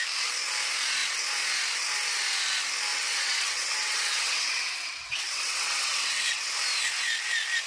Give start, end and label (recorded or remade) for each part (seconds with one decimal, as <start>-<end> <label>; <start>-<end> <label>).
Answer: 0.0-2.9 recorded; 2.9-6.4 remade; 6.4-7.7 recorded